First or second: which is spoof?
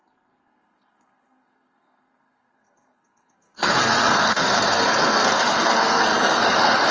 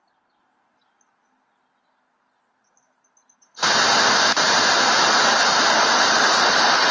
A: first